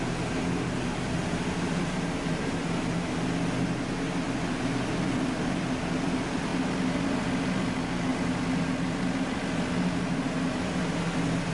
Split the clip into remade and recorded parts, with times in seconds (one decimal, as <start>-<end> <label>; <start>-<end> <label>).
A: 0.0-11.5 recorded